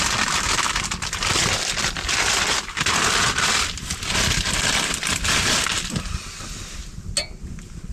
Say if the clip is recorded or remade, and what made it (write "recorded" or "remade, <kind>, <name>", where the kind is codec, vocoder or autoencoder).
recorded